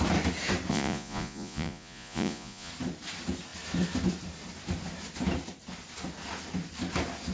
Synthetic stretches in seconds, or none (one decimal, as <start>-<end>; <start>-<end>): 0.7-2.7